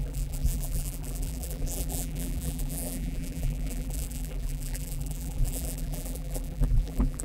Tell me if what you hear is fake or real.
fake